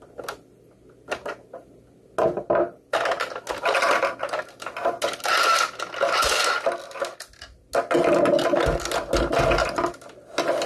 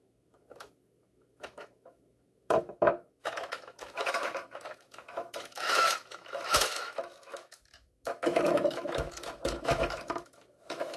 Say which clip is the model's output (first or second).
second